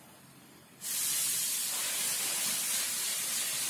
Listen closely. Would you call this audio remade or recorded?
recorded